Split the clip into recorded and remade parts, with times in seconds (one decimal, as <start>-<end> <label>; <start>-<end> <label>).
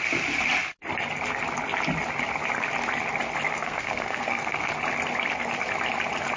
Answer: 0.0-3.5 recorded; 3.5-4.7 remade; 4.7-6.4 recorded